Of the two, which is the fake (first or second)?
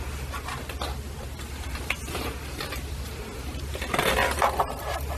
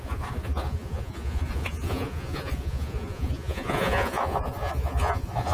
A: second